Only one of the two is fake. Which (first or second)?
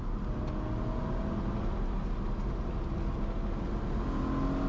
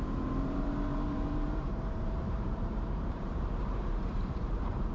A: second